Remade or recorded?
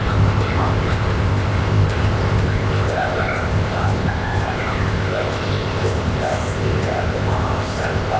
remade